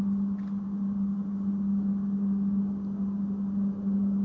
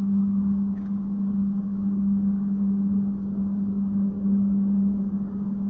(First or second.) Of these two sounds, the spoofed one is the second